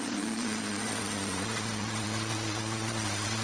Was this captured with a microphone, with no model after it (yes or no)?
no